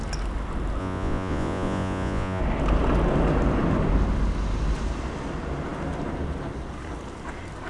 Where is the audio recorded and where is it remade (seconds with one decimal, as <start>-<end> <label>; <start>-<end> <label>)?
0.0-0.8 recorded; 0.8-2.4 remade; 2.4-7.7 recorded